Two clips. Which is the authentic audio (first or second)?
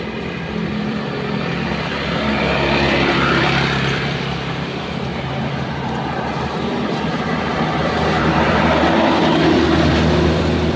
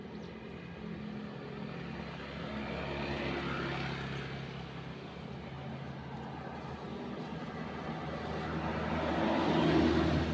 second